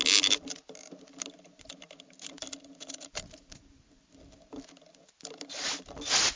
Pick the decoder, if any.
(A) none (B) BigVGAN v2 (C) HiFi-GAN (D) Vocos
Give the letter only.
A